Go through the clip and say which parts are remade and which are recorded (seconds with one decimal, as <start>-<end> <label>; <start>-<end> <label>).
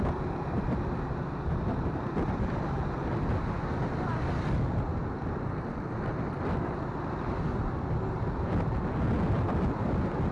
0.0-10.3 recorded